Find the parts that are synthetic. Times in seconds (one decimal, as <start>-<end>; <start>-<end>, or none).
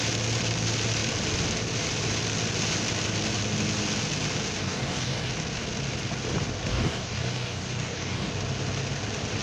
4.6-5.3; 6.7-8.3